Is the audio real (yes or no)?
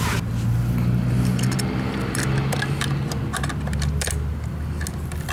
yes